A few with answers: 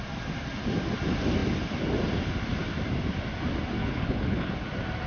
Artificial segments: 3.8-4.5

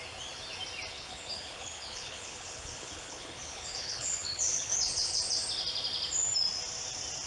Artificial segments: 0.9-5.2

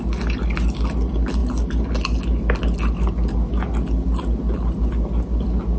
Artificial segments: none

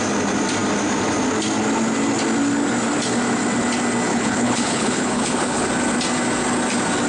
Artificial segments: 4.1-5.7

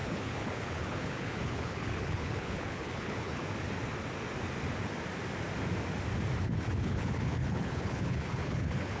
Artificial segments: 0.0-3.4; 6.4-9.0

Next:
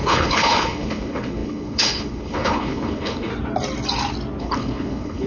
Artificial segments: 0.0-3.3; 4.4-5.3